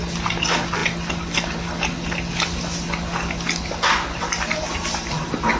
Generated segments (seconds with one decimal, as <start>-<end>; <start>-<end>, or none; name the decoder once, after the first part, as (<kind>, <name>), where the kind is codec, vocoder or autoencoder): none